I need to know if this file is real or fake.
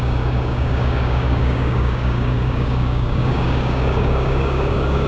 fake